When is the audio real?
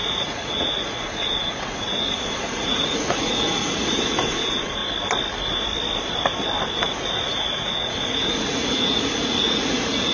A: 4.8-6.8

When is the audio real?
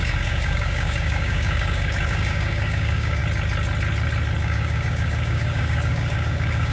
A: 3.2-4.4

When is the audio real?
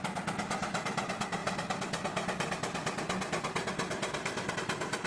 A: 0.0-1.4; 4.5-5.1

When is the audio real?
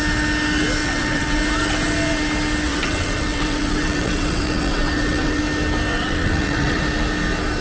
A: 0.0-0.8; 1.4-2.7; 5.4-5.9; 6.8-7.6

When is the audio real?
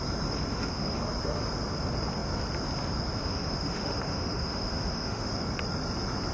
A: 0.0-0.5; 1.0-3.2; 5.3-6.3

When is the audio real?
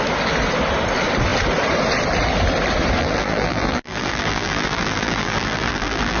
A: 0.0-3.0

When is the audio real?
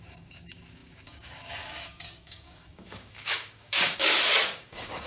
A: none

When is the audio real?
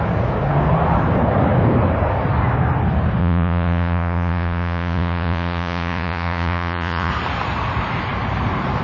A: 0.0-3.2; 7.1-8.8